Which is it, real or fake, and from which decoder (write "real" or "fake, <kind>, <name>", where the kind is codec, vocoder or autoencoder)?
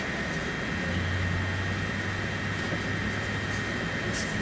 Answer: real